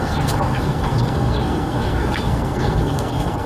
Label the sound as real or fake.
fake